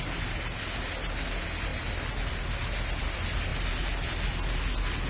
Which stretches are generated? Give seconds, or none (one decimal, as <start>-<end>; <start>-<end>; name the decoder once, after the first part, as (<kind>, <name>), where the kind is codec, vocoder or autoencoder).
1.7-2.4 (vocoder, BigVGAN v2)